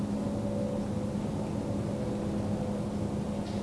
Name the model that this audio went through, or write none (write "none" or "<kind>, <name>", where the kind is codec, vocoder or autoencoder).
none